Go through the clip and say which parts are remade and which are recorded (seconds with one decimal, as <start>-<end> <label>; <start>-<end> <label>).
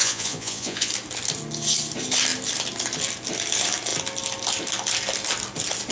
0.0-0.9 remade; 0.9-5.9 recorded